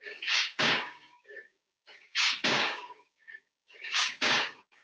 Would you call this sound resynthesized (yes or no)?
yes